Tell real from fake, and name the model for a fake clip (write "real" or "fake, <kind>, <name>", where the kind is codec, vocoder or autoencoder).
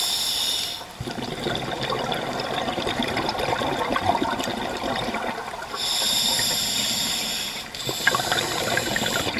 real